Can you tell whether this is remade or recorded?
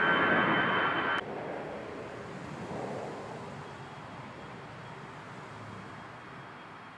recorded